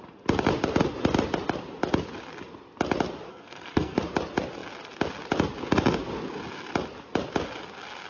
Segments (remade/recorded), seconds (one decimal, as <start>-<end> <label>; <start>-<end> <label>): 0.0-3.3 recorded; 3.3-4.0 remade; 4.0-8.1 recorded